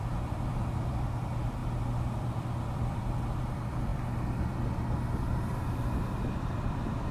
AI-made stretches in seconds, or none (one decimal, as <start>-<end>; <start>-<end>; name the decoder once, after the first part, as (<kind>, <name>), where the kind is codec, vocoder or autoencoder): 0.0-7.1 (vocoder, BigVGAN v2)